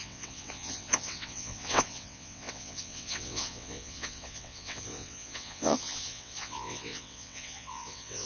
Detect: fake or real fake